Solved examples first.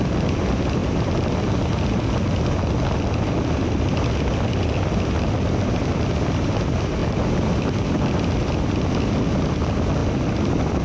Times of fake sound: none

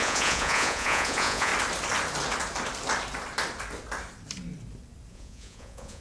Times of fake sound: 0.0-1.5; 5.1-6.0

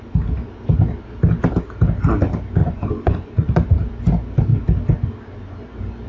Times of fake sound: 2.6-3.6

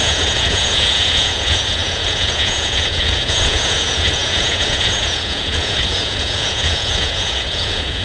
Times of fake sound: 0.0-8.0

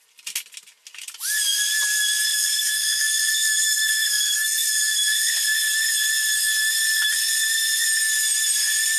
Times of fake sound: 2.3-5.3